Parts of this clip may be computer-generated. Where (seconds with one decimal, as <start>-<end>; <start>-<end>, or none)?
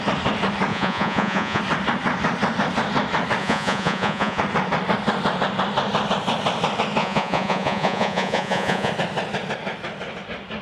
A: 0.7-1.6; 3.4-4.4; 7.0-8.9